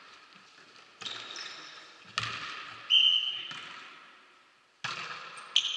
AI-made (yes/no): no